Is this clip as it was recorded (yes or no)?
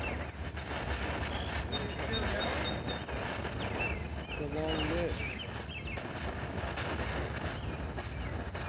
yes